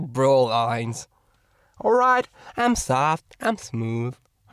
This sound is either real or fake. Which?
real